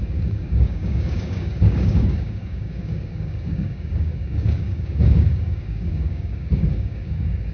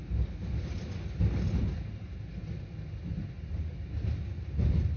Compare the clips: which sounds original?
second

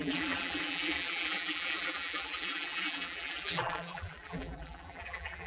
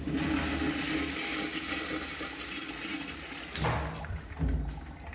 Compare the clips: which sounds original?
second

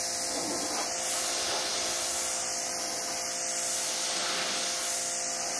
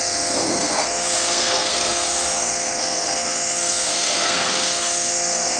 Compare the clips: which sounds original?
first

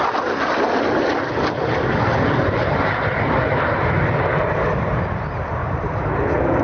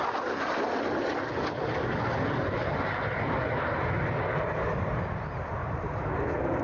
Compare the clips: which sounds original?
second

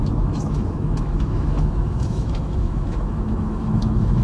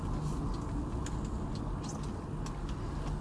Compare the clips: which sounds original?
second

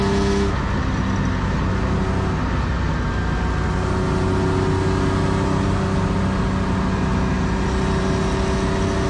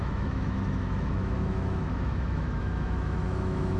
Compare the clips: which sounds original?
first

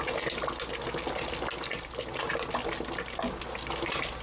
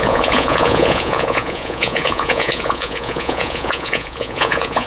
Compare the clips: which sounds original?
first